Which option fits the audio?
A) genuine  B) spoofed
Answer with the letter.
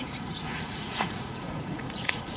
B